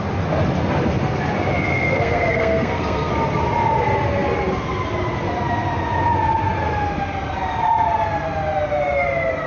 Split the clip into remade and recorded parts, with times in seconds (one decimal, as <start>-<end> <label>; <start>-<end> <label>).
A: 0.0-1.7 recorded; 1.7-3.1 remade; 3.1-9.5 recorded